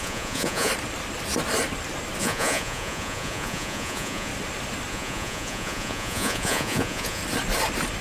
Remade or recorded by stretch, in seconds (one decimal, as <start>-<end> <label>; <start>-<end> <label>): 0.0-0.7 remade; 0.7-2.2 recorded; 2.2-4.3 remade; 4.3-4.9 recorded; 4.9-7.2 remade; 7.2-8.0 recorded